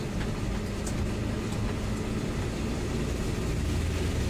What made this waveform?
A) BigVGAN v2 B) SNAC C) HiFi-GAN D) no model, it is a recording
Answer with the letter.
D